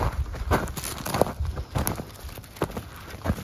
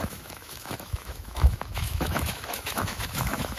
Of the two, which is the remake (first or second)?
second